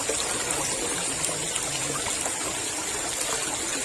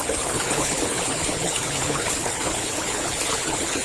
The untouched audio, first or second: first